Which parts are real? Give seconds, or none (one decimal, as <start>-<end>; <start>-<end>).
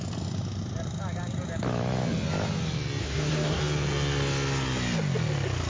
0.0-3.0; 3.6-5.7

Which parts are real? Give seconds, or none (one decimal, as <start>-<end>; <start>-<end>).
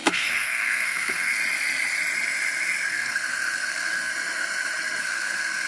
1.4-2.9; 4.1-5.0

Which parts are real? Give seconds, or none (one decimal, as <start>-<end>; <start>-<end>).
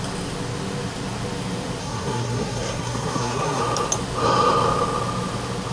0.0-1.8; 3.6-5.7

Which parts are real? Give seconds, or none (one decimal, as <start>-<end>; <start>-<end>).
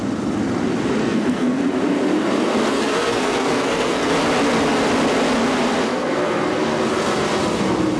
0.0-1.0; 1.6-2.7; 4.1-5.9; 6.5-8.0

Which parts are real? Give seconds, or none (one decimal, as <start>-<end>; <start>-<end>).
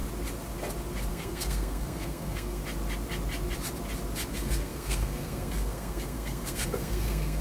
0.0-1.1; 2.6-4.3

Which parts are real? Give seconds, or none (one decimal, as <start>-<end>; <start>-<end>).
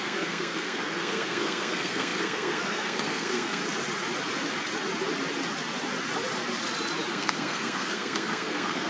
3.6-7.1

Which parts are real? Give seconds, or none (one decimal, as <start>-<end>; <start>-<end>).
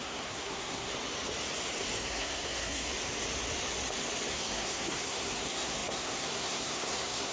0.9-2.0; 2.9-4.3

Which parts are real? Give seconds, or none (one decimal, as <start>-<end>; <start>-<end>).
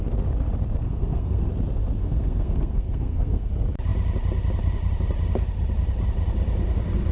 0.0-0.8; 1.5-2.0; 3.5-7.1